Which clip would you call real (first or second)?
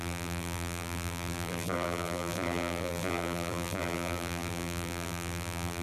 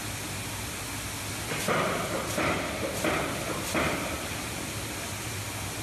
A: second